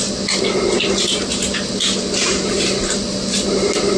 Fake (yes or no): no